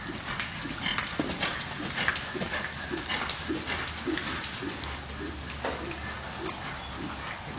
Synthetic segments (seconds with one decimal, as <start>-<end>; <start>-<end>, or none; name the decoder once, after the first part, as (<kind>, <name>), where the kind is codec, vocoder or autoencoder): none